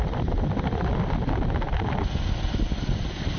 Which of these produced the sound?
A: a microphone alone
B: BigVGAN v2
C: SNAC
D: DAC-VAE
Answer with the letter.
A